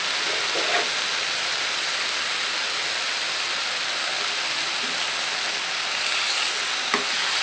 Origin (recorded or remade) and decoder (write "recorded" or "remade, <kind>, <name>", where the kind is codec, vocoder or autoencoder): recorded